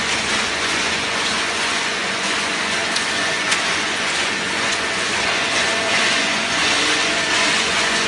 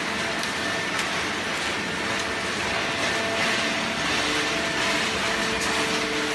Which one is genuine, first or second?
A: second